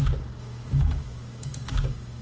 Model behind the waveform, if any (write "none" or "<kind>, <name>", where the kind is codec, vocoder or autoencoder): codec, DAC